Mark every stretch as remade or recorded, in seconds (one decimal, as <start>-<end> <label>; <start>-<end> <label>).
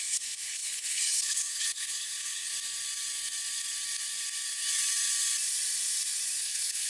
0.0-2.5 remade; 2.5-6.4 recorded; 6.4-6.9 remade